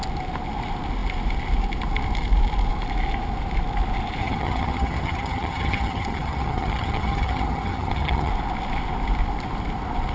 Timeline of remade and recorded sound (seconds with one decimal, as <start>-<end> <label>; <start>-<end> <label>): 0.0-4.2 recorded; 4.2-8.3 remade; 8.3-10.1 recorded